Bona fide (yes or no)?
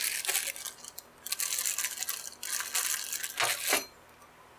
yes